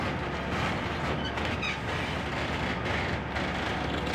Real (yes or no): yes